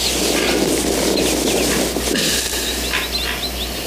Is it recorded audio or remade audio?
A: recorded